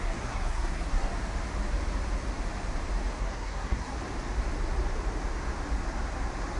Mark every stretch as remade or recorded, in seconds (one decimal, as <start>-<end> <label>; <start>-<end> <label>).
0.0-1.1 remade; 1.1-3.2 recorded; 3.2-3.9 remade; 3.9-6.6 recorded